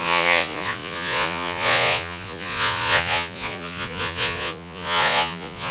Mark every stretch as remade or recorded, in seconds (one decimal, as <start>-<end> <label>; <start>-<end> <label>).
0.0-5.7 remade